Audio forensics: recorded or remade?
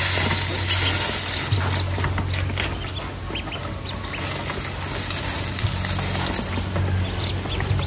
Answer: recorded